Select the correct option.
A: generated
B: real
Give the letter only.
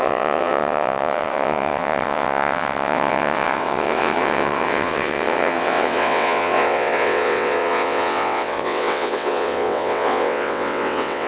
A